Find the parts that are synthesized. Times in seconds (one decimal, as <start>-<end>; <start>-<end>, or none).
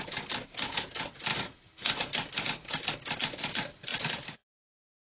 none